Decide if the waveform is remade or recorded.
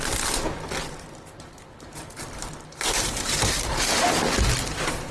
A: recorded